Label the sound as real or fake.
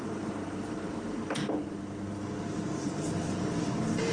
fake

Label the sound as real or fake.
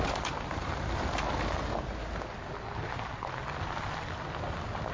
real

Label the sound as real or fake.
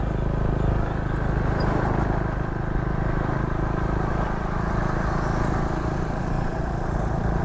real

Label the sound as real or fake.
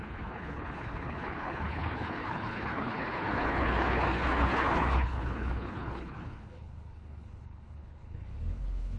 fake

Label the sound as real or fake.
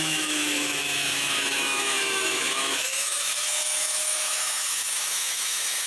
fake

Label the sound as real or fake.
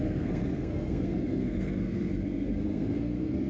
fake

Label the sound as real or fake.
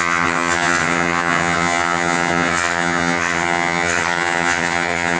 fake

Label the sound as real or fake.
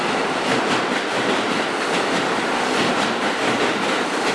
real